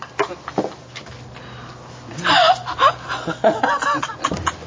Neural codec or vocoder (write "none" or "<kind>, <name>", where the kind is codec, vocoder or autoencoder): none